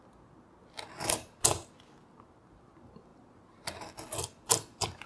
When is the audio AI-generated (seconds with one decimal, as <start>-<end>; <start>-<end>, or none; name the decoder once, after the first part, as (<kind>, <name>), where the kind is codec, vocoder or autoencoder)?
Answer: none